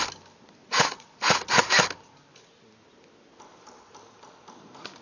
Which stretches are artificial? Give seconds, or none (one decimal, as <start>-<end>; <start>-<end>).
0.6-1.7